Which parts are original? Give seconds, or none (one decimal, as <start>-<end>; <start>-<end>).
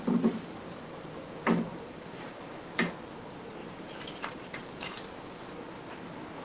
0.0-1.7; 2.3-3.6; 5.5-6.4